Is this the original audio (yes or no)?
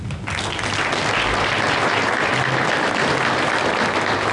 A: yes